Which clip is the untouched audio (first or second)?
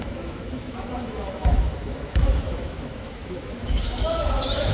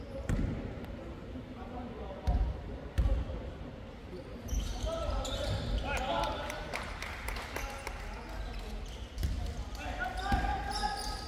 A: second